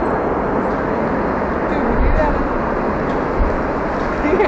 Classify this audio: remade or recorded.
recorded